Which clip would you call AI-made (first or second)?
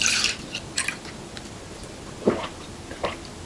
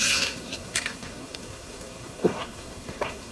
second